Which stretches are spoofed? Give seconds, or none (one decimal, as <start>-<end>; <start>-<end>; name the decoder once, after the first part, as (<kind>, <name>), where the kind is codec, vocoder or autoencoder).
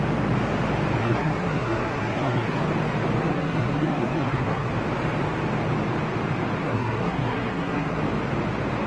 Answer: 1.0-2.6 (codec, SNAC); 3.2-4.7; 6.6-8.0